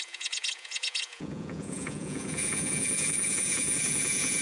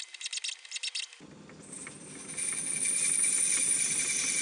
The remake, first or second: first